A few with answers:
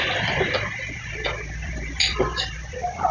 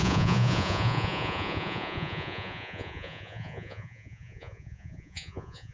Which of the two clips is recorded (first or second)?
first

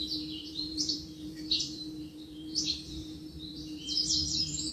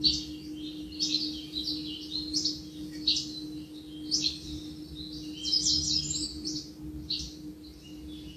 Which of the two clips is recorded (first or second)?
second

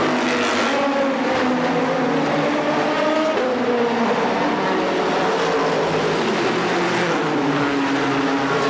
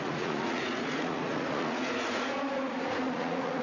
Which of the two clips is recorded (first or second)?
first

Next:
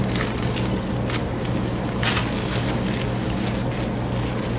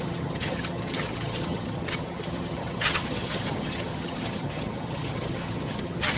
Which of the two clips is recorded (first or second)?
first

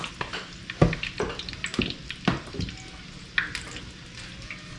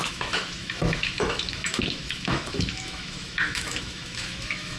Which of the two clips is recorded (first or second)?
first